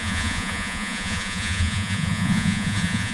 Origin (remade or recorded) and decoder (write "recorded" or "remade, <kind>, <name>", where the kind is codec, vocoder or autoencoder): remade, vocoder, Vocos